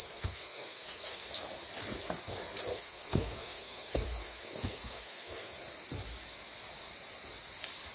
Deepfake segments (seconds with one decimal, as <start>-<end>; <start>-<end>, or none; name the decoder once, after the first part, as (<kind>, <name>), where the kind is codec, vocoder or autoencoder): 0.0-1.3 (codec, SNAC); 2.7-5.6